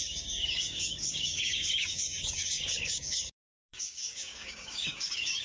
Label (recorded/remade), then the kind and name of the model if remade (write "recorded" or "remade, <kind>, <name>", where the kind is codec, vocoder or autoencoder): remade, codec, DAC